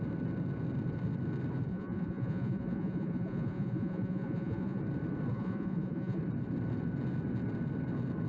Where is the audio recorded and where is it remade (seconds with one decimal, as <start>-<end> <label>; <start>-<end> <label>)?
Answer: 0.0-1.7 recorded; 1.7-4.8 remade; 4.8-5.3 recorded; 5.3-6.2 remade; 6.2-8.3 recorded